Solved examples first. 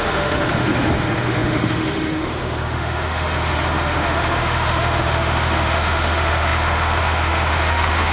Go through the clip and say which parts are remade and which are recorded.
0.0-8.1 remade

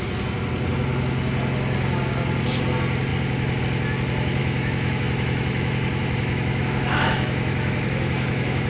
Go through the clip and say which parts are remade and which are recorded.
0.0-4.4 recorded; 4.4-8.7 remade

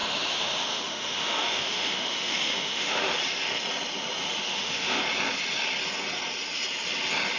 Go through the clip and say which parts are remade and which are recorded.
0.0-3.1 remade; 3.1-4.5 recorded; 4.5-5.0 remade; 5.0-7.4 recorded